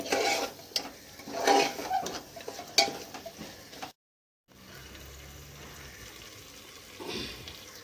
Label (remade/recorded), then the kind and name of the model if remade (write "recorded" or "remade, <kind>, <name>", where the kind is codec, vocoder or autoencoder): recorded